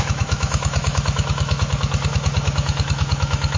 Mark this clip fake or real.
fake